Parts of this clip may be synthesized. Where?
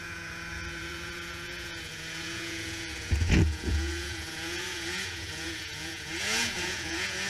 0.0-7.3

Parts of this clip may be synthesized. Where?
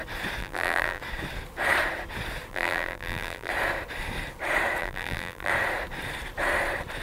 0.4-1.0; 2.5-3.5; 4.8-5.5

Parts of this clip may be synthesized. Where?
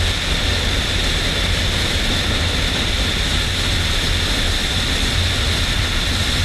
none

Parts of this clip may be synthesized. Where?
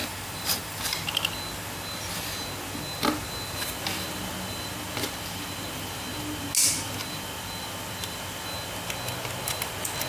0.0-0.8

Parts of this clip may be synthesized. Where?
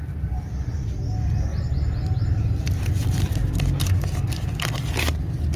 1.5-4.7